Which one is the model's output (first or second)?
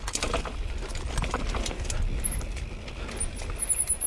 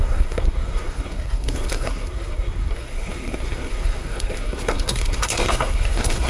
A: second